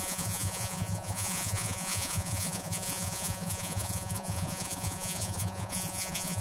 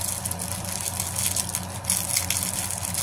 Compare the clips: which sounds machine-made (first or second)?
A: first